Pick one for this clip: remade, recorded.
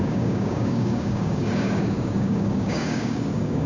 remade